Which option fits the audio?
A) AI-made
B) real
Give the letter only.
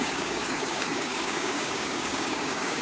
A